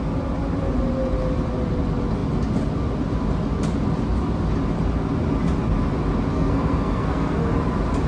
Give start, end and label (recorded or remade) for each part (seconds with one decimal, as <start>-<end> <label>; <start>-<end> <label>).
0.0-6.3 recorded; 6.3-7.5 remade; 7.5-8.1 recorded